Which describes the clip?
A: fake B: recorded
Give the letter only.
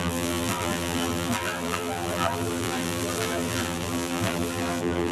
A